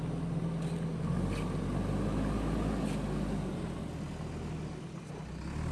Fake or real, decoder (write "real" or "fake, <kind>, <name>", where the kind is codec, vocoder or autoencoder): real